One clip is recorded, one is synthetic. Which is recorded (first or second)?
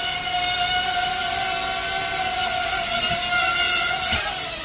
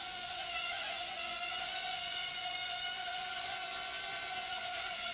first